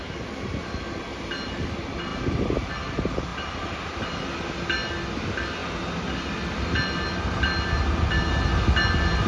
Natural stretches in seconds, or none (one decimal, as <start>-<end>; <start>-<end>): 0.0-2.1; 2.7-9.3